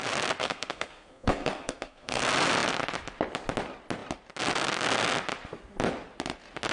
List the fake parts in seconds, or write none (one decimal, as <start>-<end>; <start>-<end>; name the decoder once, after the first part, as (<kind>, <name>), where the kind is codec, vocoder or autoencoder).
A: 0.4-2.2 (codec, SNAC)